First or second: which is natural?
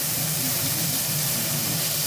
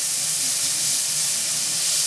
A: second